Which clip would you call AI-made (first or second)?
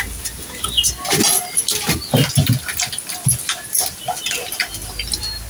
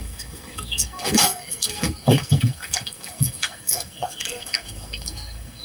second